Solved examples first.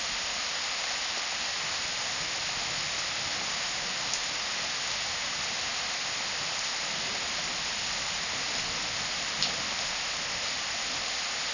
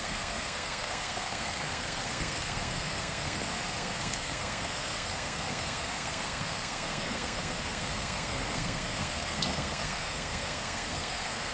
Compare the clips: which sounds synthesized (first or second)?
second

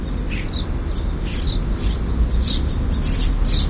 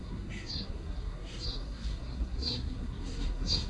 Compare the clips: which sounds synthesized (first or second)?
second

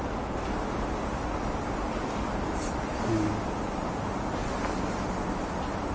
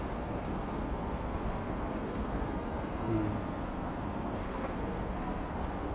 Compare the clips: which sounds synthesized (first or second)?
second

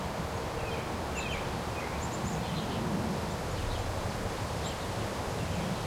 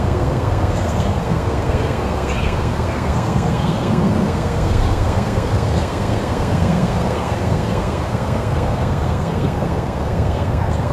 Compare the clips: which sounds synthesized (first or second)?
second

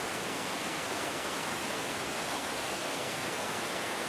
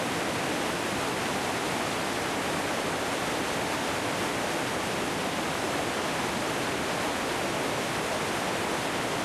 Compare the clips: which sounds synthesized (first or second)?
first